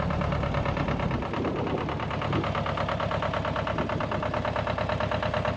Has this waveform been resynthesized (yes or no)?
no